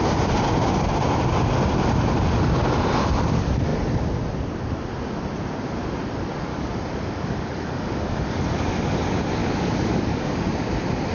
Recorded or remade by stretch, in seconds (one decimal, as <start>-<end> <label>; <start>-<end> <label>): 0.0-6.5 recorded; 6.5-8.3 remade; 8.3-9.4 recorded; 9.4-10.5 remade; 10.5-11.1 recorded